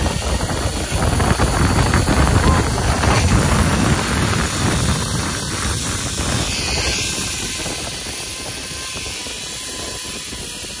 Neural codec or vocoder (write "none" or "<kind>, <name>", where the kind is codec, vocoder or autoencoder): none